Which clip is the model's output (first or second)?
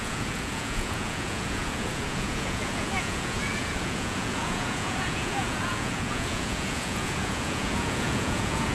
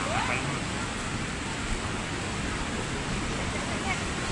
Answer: first